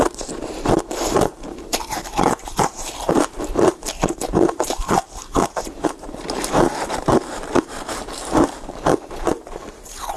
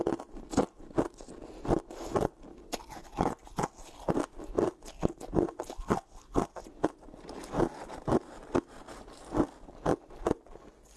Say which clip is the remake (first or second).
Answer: first